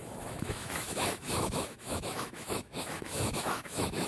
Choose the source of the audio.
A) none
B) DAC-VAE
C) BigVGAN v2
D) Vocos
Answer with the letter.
B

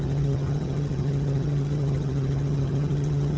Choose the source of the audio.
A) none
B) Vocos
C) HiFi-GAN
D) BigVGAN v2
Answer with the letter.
C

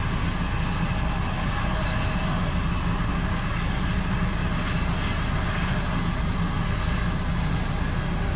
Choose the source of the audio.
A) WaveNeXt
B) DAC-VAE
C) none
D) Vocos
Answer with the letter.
C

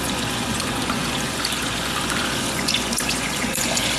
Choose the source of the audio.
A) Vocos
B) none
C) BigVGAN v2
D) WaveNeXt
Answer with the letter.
A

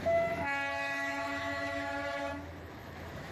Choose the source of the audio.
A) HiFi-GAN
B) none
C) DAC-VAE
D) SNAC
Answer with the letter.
C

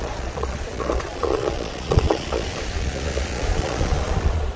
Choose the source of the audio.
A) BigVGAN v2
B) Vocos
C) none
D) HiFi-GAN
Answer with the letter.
B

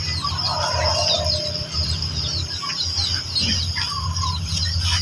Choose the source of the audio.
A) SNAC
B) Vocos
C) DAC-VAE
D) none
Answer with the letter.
D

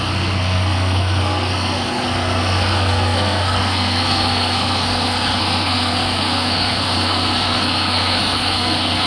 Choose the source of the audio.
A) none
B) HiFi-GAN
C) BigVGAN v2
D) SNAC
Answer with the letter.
D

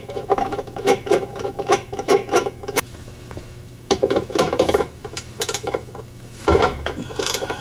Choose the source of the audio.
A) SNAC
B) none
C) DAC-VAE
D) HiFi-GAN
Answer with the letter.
C